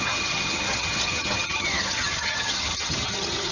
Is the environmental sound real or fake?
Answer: fake